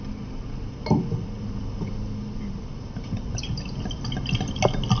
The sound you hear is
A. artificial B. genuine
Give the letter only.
B